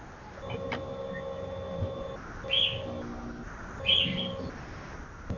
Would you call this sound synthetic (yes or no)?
no